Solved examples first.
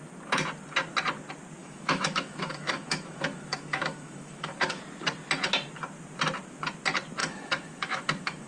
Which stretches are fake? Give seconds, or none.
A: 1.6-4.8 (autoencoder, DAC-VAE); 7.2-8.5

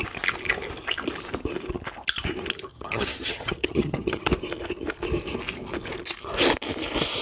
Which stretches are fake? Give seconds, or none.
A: 2.7-4.3 (vocoder, HiFi-GAN)

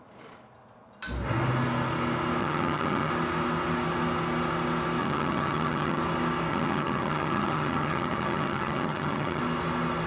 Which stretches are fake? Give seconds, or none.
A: 2.4-3.1 (vocoder, HiFi-GAN); 5.0-6.0; 6.5-9.4

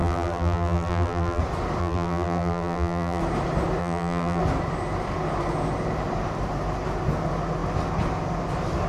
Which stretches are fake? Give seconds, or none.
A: 0.0-1.4 (vocoder, BigVGAN v2); 1.8-3.2; 3.8-4.4